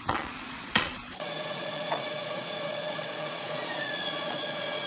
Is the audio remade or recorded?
remade